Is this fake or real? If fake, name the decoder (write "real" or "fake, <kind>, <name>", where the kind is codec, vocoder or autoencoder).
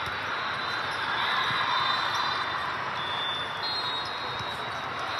real